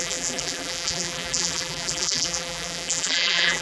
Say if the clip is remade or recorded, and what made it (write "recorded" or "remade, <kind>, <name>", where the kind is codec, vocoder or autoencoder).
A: remade, vocoder, BigVGAN v2